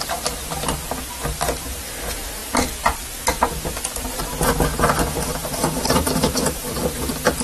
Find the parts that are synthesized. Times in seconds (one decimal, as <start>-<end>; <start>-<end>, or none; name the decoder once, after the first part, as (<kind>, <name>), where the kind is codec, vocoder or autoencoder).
5.4-7.4 (vocoder, BigVGAN v2)